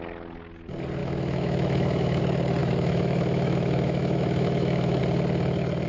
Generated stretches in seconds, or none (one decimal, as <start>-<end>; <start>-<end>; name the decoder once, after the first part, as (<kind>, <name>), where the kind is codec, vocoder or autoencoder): 1.0-2.2 (autoencoder, DAC-VAE); 2.6-5.0